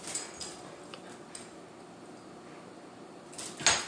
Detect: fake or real real